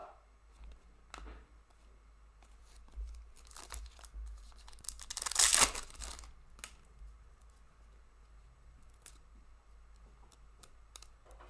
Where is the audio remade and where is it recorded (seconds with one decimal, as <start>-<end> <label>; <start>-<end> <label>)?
0.0-11.5 recorded